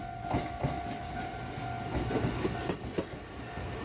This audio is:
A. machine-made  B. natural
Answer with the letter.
B